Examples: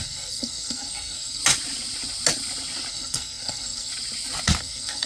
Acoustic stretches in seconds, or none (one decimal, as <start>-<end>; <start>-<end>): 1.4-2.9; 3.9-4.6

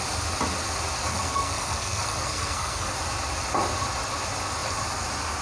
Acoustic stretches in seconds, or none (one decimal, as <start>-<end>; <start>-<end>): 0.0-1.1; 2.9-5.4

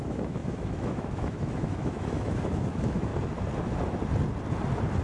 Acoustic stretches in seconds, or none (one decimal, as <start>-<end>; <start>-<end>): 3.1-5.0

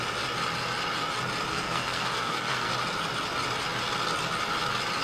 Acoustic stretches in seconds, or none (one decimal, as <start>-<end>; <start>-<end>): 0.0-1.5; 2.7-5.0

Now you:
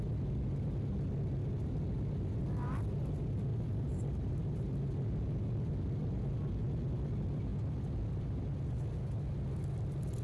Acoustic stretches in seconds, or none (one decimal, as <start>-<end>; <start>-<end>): 0.0-3.5; 4.7-10.2

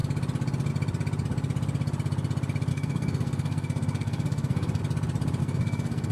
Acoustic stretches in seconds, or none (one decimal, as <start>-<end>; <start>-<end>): 0.0-2.7; 4.8-5.4

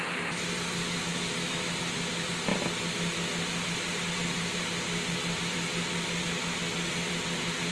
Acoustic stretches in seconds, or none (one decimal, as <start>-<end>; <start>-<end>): 0.0-7.7

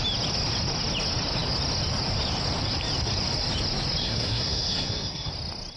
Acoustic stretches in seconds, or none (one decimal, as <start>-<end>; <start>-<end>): 0.0-4.0; 5.3-5.8